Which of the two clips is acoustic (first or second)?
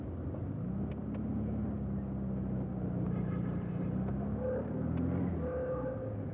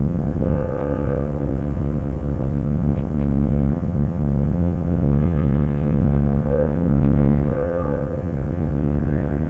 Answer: first